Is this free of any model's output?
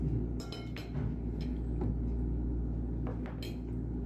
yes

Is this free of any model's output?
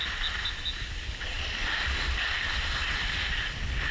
yes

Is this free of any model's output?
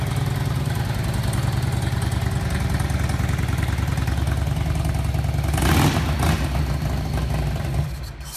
yes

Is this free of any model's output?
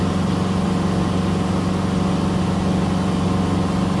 yes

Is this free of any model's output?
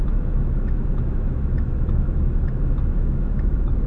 no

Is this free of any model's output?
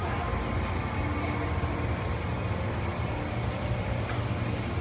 yes